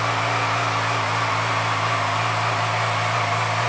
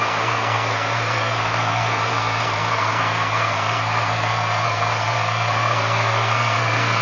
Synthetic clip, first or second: second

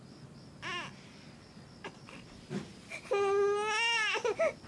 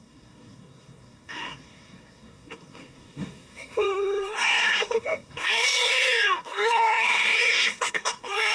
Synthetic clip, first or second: second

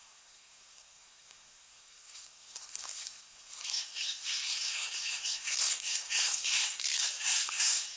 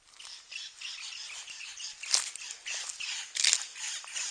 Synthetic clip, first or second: first